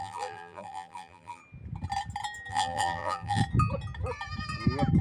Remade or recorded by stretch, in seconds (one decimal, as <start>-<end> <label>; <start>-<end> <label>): 0.0-1.4 remade; 1.4-2.5 recorded; 2.5-3.4 remade; 3.4-5.0 recorded

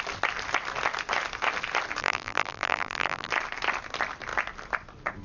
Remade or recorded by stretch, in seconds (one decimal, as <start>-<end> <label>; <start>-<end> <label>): 0.0-2.0 recorded; 2.0-3.3 remade; 3.3-5.2 recorded